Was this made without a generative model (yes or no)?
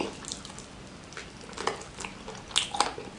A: yes